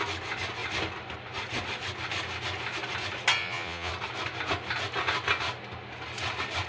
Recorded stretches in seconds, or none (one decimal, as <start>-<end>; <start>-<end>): 0.0-3.4; 3.9-6.7